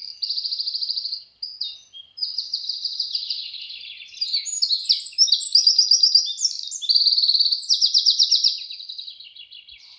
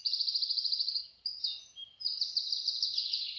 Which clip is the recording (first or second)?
first